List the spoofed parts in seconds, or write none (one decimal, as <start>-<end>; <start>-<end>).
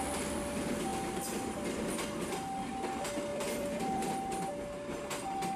0.9-1.6; 3.3-4.1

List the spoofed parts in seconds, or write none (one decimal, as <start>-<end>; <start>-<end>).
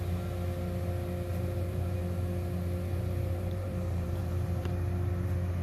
1.3-2.0; 2.9-4.7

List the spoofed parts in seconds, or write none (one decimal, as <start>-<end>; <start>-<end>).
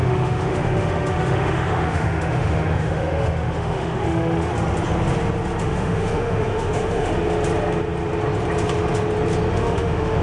0.0-4.5; 5.6-7.1; 9.5-10.2